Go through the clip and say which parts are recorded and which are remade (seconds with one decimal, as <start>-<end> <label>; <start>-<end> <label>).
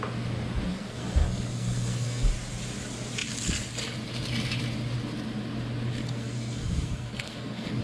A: 0.0-0.7 recorded; 0.7-2.3 remade; 2.3-6.0 recorded; 6.0-7.8 remade